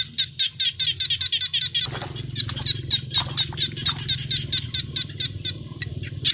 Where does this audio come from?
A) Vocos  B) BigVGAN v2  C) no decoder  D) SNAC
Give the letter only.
C